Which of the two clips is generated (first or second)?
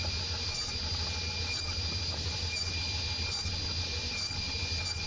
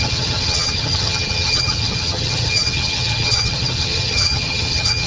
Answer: second